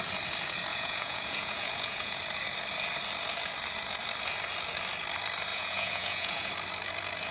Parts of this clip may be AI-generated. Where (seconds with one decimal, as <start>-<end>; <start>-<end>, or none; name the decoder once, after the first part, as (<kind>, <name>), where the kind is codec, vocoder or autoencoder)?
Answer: 0.7-2.2 (vocoder, Vocos); 5.5-6.5